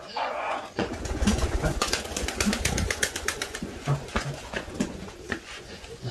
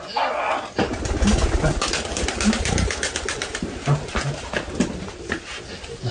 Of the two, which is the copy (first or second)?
first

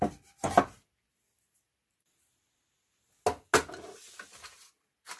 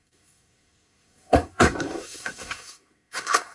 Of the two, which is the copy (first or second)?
second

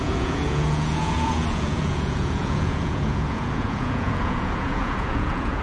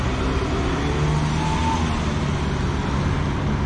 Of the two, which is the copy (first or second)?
first